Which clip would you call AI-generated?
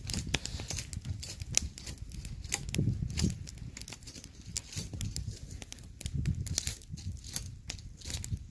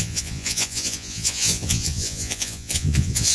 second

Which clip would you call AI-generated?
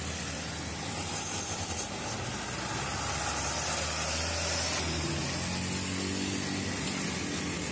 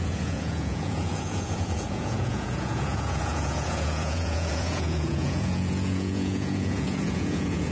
second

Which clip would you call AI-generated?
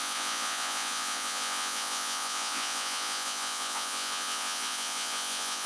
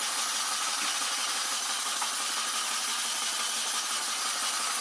first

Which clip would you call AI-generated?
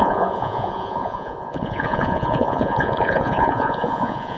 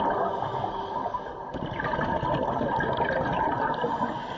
first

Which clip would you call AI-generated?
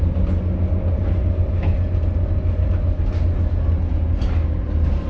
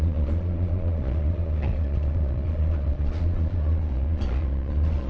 second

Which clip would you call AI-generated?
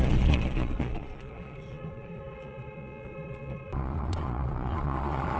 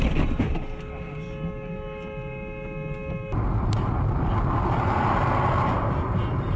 first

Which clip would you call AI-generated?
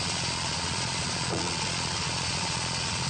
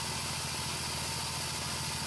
first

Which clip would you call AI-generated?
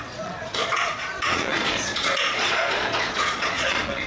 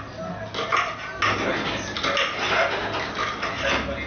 first